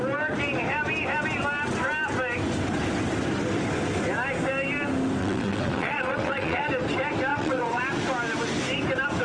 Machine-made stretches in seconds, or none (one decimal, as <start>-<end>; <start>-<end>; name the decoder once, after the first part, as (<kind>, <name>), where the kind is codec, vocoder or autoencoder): 5.2-6.7 (vocoder, WaveNeXt); 7.3-7.8